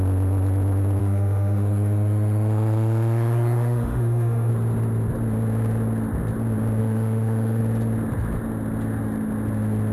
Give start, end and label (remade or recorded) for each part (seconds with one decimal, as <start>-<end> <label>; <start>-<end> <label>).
0.0-1.0 recorded; 1.0-4.5 remade; 4.5-6.8 recorded; 6.8-7.6 remade; 7.6-9.9 recorded